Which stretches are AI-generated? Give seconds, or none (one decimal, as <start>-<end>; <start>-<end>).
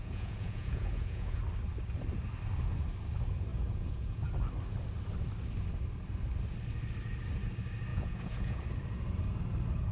0.0-1.4; 3.5-4.3; 7.9-8.6